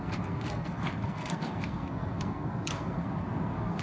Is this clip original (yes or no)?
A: no